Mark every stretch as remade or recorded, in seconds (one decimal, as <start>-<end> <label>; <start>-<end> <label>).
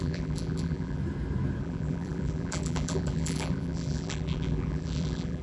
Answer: 0.0-1.0 remade; 1.0-1.6 recorded; 1.6-5.4 remade